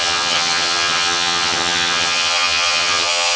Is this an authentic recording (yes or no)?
no